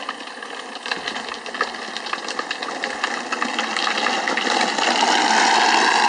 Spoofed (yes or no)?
no